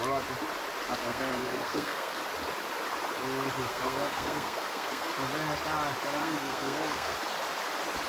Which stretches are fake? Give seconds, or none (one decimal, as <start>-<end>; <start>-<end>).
1.0-2.2; 3.7-5.1; 6.2-7.2